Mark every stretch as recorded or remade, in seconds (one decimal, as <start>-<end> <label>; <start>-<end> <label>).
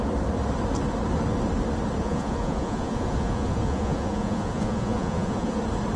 0.0-2.0 recorded; 2.0-5.6 remade; 5.6-6.0 recorded